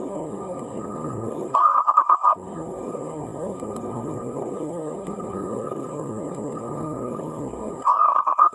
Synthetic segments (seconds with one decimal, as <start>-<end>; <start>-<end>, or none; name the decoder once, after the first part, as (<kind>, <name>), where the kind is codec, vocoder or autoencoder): 0.0-8.5 (codec, SNAC)